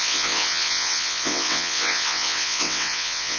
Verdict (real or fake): fake